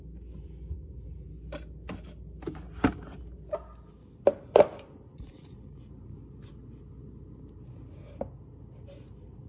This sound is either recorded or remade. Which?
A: recorded